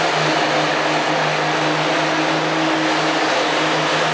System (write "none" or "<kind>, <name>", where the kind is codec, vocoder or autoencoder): none